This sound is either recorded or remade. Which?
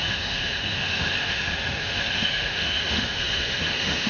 remade